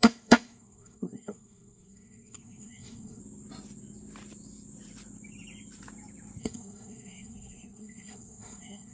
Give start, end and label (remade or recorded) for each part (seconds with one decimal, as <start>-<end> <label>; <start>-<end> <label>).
0.0-3.2 remade; 3.2-6.4 recorded; 6.4-8.9 remade